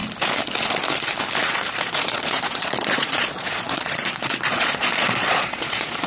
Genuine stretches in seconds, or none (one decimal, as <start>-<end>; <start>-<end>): 0.0-1.4